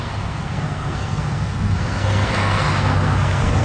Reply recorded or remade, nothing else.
remade